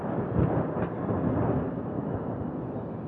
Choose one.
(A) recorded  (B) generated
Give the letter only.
A